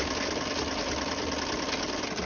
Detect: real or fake real